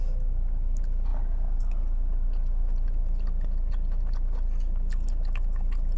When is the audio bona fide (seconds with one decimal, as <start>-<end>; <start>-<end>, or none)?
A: 0.0-6.0